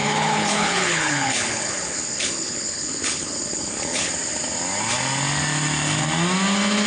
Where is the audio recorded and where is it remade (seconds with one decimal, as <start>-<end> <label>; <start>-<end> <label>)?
0.0-4.1 remade; 4.1-6.9 recorded